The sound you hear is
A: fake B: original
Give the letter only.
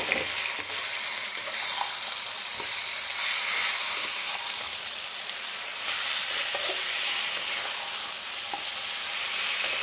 A